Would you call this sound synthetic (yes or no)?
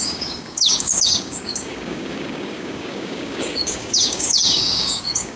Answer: yes